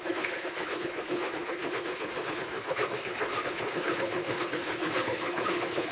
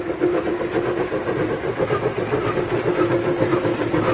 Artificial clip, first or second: first